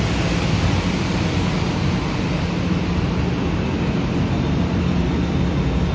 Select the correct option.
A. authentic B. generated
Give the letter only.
A